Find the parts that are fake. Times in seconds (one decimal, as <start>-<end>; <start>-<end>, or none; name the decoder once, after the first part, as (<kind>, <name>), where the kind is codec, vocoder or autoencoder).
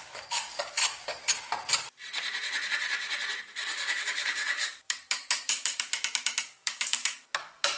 0.0-0.8 (codec, DAC); 3.4-5.9; 6.4-7.8